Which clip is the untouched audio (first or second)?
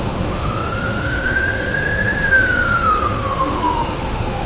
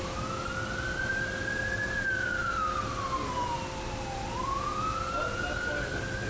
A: second